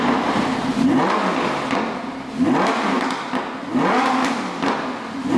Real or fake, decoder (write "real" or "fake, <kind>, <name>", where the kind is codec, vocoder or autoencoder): real